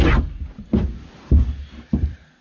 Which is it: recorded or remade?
recorded